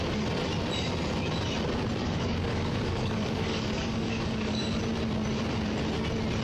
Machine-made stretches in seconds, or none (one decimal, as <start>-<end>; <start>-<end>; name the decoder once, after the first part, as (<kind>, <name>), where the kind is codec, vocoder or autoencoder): 2.0-4.8 (codec, DAC)